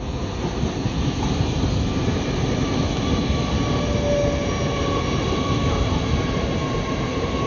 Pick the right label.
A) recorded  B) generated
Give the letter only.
A